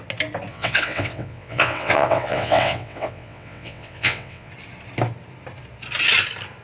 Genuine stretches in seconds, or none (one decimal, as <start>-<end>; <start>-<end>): 0.0-0.5; 4.5-6.6